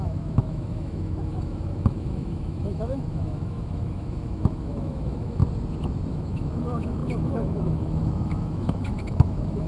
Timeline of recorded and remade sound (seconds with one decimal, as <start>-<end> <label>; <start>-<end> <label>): 0.0-5.4 remade; 5.4-6.1 recorded; 6.1-9.7 remade